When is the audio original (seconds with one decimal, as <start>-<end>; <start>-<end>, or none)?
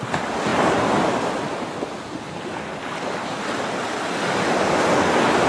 0.0-5.5